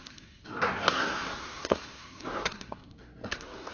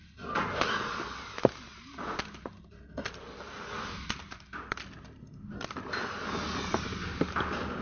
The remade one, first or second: first